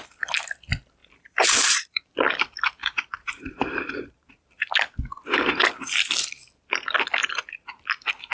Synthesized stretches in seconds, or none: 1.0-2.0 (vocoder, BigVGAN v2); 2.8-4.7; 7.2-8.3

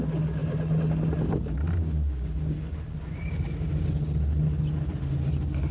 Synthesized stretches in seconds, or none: none

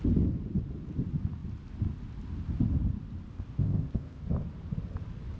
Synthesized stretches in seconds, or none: 3.3-4.2 (codec, ZipCodec)

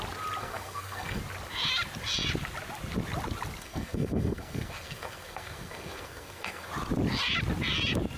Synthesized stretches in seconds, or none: 0.4-1.2 (codec, SNAC); 3.6-6.7

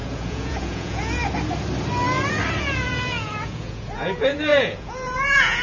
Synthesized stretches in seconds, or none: 0.0-1.2 (vocoder, Vocos); 2.6-5.6

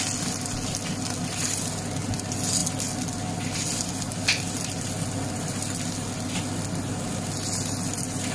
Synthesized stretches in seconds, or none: none

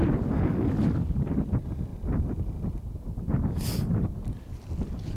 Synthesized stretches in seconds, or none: none

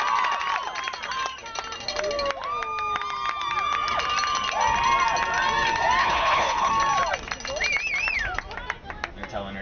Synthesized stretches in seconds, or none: 6.0-6.7 (codec, HILCodec)